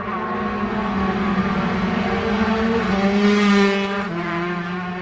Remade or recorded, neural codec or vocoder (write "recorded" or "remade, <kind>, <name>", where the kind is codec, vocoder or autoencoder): recorded